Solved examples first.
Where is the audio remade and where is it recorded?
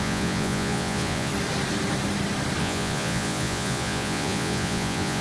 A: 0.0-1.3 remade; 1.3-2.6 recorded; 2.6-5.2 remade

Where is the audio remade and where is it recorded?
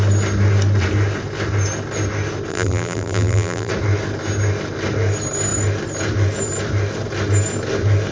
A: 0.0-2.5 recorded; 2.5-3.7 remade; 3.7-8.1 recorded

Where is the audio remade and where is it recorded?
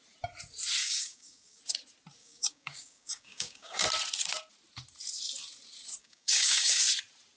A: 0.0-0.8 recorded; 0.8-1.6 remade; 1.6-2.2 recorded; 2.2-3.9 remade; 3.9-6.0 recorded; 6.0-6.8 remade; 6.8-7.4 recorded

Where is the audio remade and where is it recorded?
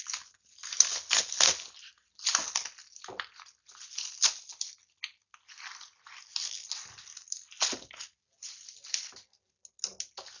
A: 0.0-10.4 recorded